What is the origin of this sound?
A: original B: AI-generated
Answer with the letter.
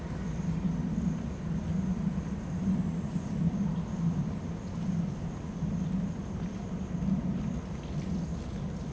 A